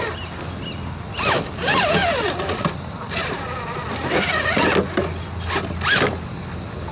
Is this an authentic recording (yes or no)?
yes